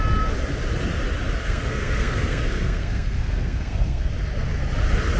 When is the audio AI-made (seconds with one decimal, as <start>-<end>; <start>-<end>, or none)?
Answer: 1.4-4.1